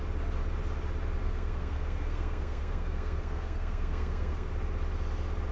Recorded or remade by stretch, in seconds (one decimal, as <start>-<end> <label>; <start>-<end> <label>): 0.0-1.2 recorded; 1.2-4.5 remade; 4.5-5.5 recorded